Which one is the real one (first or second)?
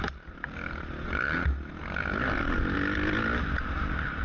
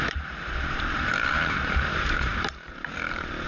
first